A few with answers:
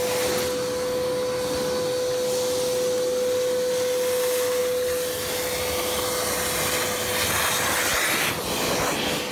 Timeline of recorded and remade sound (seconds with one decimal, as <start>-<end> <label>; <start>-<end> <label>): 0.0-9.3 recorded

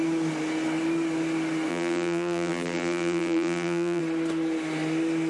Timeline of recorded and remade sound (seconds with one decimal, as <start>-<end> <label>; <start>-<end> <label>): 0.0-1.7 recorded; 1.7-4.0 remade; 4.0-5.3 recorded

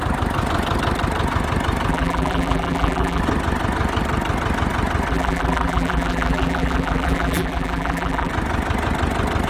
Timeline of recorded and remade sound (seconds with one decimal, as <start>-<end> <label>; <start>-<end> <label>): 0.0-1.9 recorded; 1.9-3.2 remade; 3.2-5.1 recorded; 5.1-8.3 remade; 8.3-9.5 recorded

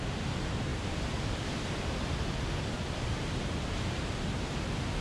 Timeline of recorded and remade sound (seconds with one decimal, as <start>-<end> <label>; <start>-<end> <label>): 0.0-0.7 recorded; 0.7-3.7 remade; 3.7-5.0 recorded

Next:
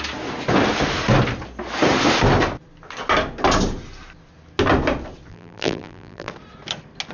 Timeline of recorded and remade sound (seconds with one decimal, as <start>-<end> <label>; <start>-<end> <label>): 0.0-5.3 recorded; 5.3-6.3 remade; 6.3-7.1 recorded

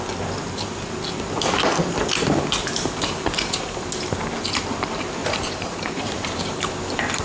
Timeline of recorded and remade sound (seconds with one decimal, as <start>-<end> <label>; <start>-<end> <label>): 0.0-2.6 recorded; 2.6-3.8 remade; 3.8-5.2 recorded; 5.2-6.7 remade; 6.7-7.2 recorded